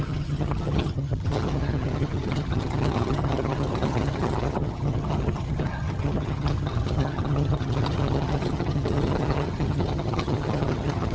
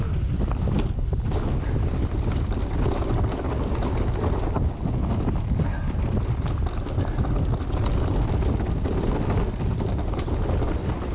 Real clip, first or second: second